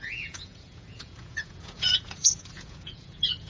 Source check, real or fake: fake